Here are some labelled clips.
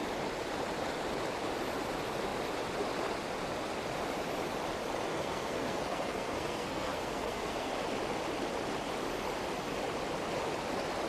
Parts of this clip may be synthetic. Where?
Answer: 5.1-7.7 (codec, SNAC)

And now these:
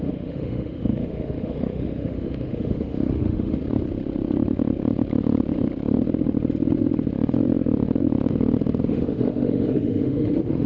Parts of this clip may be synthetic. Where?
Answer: 0.0-3.6 (autoencoder, DAC-VAE); 8.8-10.7

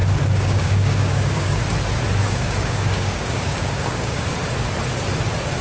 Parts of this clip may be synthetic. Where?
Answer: 0.0-1.6 (codec, DAC); 2.2-4.3

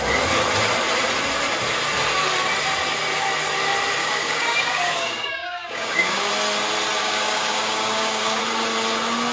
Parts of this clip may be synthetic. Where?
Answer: 4.0-6.3 (codec, DAC); 7.0-8.4

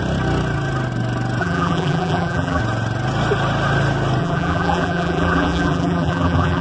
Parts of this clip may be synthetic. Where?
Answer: 1.4-2.6 (vocoder, BigVGAN v2); 4.2-6.6

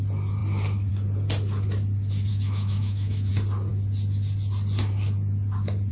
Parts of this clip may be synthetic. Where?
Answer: 2.3-3.3 (autoencoder, DAC-VAE)

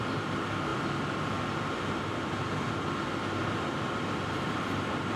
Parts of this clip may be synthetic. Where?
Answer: 0.0-0.7 (vocoder, BigVGAN v2); 3.8-5.2